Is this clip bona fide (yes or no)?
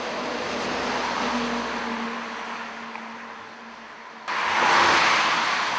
yes